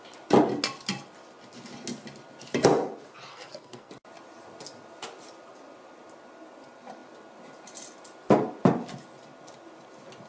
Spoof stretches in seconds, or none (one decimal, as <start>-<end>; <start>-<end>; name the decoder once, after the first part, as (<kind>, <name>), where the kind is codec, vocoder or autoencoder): 3.3-3.9 (codec, SNAC)